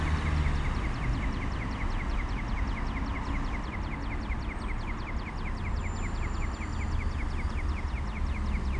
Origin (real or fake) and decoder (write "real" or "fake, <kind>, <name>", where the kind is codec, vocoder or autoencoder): real